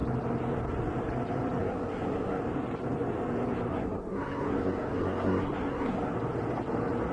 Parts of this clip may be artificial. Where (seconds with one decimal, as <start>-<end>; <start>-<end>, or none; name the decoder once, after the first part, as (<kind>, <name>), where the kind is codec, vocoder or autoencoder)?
1.6-2.4 (codec, SNAC); 3.7-6.1